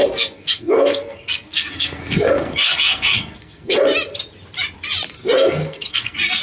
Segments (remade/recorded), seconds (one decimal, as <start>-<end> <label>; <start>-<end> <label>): 0.0-3.8 remade; 3.8-5.2 recorded; 5.2-6.4 remade